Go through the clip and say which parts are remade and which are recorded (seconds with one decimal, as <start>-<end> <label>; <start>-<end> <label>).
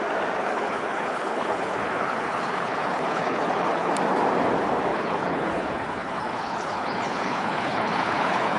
0.0-0.4 recorded; 0.4-3.9 remade; 3.9-4.9 recorded; 4.9-8.6 remade